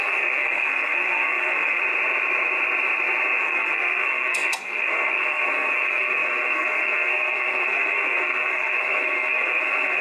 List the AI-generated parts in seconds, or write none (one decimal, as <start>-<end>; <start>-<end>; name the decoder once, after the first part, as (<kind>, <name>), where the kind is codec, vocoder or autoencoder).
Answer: 0.0-1.8 (codec, SNAC); 3.4-10.0